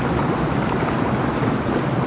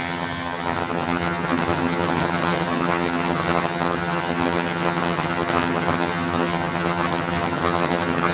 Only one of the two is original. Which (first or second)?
first